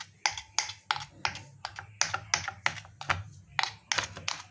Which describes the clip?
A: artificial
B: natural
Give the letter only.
B